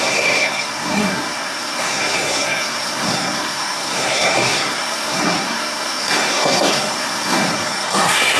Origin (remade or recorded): remade